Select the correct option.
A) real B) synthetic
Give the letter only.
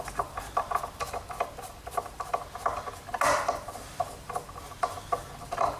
A